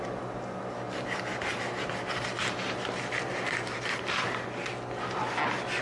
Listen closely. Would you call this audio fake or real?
real